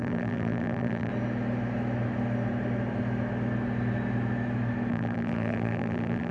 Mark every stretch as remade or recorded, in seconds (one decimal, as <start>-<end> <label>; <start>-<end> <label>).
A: 0.0-1.1 remade; 1.1-4.9 recorded; 4.9-6.3 remade